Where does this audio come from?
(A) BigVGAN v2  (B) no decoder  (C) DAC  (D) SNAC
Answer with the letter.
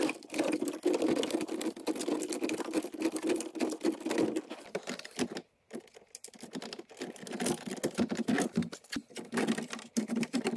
B